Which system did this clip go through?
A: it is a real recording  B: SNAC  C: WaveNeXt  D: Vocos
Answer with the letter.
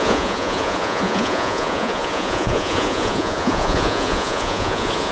D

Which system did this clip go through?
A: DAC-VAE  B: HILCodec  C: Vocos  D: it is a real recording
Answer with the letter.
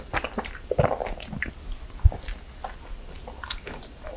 D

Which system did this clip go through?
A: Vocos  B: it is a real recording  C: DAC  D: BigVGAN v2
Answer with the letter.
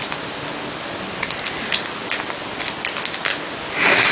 B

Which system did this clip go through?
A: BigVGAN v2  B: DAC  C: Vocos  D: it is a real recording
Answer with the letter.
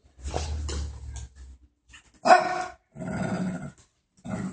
D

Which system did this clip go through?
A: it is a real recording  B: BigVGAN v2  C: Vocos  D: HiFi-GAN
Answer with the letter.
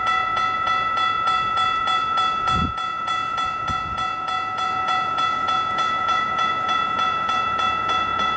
C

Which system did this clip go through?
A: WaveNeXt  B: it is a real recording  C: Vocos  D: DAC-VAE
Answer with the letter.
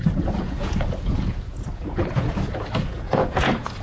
C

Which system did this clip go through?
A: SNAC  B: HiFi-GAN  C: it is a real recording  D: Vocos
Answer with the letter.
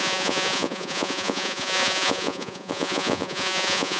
D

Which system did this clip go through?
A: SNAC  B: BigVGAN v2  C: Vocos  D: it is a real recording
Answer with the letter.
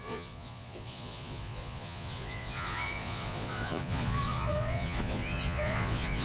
C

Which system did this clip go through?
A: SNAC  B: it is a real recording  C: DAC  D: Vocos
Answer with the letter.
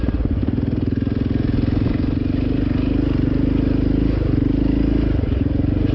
B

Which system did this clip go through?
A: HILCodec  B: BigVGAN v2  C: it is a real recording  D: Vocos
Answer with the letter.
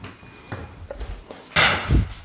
C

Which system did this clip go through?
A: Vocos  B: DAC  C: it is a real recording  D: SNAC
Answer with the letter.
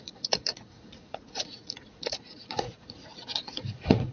A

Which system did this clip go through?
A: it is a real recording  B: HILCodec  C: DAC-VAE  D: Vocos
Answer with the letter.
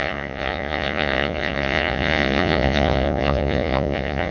D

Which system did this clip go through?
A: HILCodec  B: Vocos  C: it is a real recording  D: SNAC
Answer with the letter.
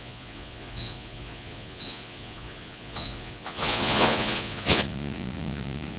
B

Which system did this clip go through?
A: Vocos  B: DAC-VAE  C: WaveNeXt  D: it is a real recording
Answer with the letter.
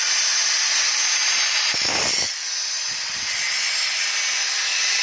D